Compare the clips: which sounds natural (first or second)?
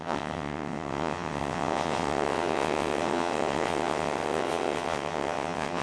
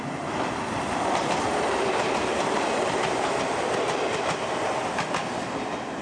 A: second